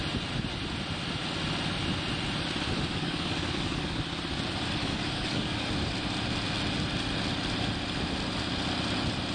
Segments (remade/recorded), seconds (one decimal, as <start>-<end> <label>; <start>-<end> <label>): 0.0-2.9 recorded; 2.9-4.0 remade; 4.0-4.8 recorded; 4.8-5.7 remade; 5.7-9.3 recorded